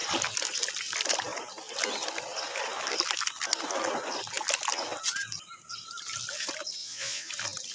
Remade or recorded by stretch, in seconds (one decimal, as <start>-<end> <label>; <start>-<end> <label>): 0.0-6.8 recorded; 6.8-7.3 remade; 7.3-7.7 recorded